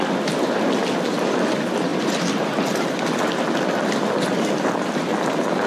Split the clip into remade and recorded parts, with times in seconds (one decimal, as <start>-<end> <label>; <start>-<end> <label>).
0.0-5.7 recorded